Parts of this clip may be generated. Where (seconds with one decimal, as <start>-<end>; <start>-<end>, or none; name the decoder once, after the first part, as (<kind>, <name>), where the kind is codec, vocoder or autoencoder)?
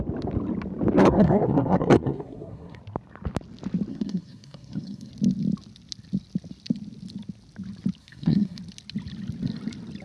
1.0-2.8 (codec, SNAC); 3.9-5.1; 8.0-8.6